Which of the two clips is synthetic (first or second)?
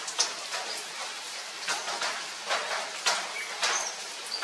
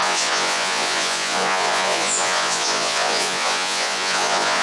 second